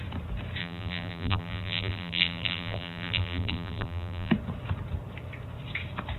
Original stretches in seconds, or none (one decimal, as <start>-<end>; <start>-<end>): 0.0-0.6; 4.3-6.2